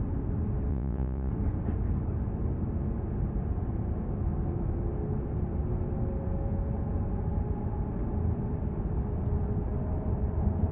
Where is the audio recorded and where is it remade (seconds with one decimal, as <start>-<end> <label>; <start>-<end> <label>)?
0.0-0.7 recorded; 0.7-1.3 remade; 1.3-10.7 recorded